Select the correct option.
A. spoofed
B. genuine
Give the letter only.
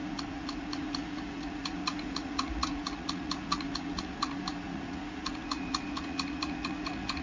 A